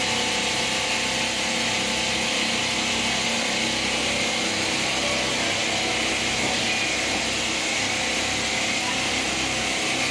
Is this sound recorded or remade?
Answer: recorded